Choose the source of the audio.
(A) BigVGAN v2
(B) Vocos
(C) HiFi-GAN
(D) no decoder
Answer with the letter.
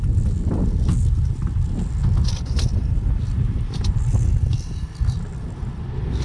D